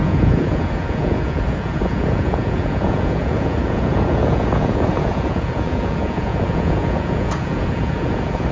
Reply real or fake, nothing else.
fake